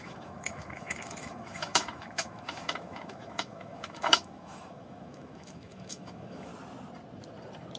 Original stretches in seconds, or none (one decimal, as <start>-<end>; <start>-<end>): 6.5-7.8